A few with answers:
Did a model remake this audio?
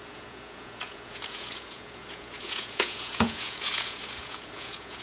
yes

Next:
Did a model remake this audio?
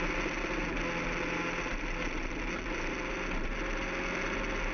no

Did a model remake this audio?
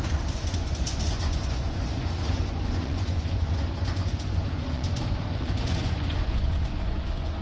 yes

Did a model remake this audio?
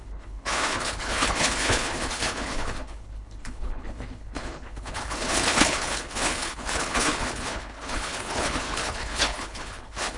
yes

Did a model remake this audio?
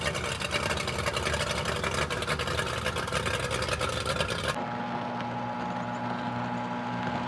no